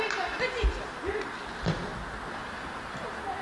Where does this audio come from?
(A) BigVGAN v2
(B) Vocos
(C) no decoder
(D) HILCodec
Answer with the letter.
C